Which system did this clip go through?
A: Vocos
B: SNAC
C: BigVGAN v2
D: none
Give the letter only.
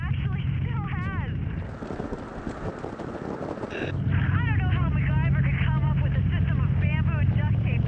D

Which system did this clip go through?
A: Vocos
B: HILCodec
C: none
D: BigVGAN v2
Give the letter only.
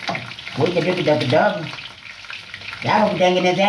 C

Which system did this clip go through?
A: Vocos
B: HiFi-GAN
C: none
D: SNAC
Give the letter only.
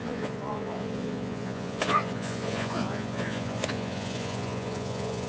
A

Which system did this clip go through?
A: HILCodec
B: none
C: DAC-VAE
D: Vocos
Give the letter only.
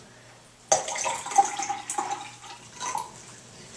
B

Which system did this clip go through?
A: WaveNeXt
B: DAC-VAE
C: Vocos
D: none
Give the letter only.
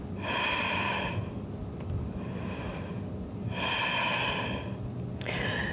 D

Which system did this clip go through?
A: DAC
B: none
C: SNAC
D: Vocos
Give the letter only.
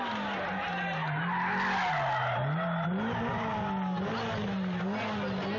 B